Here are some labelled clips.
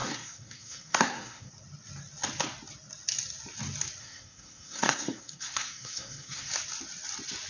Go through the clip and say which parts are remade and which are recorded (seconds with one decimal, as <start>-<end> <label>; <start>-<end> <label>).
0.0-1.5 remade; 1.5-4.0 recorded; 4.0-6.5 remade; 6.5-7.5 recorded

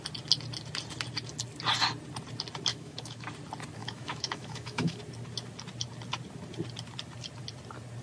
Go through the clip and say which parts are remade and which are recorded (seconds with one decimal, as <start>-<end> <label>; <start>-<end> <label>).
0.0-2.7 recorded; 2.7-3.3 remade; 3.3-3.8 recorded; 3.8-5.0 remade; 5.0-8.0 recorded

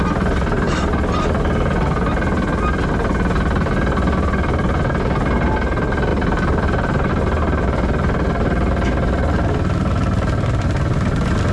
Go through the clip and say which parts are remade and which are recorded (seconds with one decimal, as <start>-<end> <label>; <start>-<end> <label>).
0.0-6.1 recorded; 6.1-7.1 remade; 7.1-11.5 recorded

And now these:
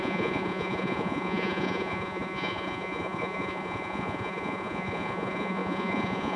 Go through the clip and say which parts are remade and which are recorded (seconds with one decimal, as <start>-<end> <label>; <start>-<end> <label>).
0.0-6.4 remade

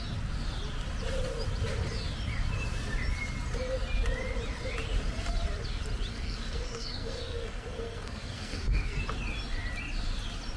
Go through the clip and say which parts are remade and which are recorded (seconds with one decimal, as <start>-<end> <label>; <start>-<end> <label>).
0.0-6.1 recorded; 6.1-9.0 remade; 9.0-10.6 recorded

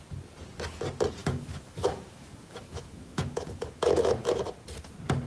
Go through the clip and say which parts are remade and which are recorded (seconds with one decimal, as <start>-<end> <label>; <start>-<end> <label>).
0.0-1.2 recorded; 1.2-4.4 remade; 4.4-5.3 recorded